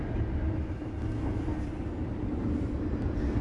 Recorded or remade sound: recorded